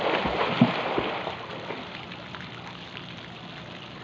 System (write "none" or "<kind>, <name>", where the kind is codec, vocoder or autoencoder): none